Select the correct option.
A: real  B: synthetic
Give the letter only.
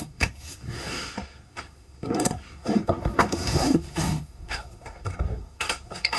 B